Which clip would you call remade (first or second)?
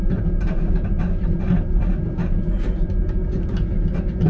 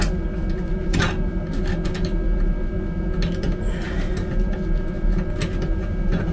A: first